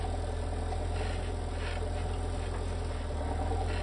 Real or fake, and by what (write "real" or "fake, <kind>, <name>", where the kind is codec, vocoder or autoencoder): real